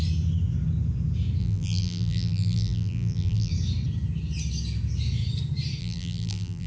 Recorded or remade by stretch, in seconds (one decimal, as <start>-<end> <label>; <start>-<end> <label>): 0.0-1.4 recorded; 1.4-3.5 remade; 3.5-5.8 recorded; 5.8-6.7 remade